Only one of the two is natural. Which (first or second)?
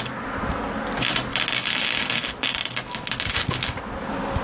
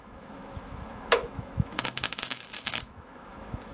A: first